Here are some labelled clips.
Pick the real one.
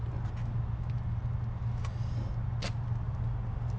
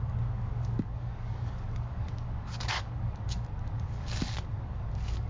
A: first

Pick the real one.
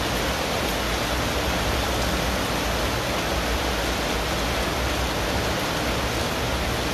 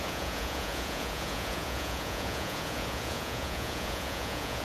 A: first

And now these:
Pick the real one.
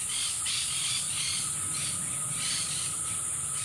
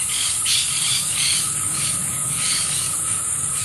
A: first